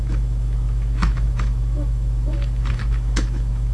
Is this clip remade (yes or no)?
yes